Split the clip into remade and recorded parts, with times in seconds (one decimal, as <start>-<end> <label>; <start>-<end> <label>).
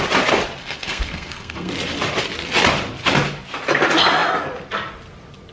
0.0-0.6 recorded; 0.6-1.7 remade; 1.7-5.5 recorded